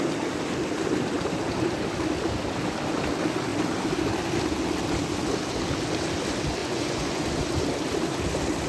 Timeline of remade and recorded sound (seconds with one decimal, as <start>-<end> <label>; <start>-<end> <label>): 0.0-6.6 recorded; 6.6-7.4 remade; 7.4-8.7 recorded